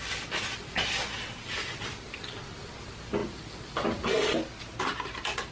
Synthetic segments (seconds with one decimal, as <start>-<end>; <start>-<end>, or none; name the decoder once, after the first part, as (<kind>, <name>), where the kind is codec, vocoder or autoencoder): none